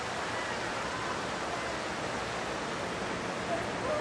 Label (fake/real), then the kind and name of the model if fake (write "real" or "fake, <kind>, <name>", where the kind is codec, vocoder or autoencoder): real